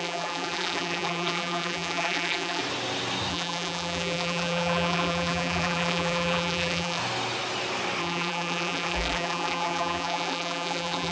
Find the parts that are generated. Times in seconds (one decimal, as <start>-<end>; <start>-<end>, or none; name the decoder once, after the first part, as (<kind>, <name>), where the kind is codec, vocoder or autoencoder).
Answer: 0.0-2.6 (vocoder, BigVGAN v2); 3.3-7.0; 8.0-11.1